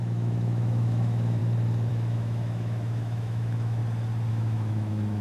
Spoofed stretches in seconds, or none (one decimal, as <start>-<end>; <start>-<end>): 0.0-1.4; 1.9-3.8; 4.3-5.2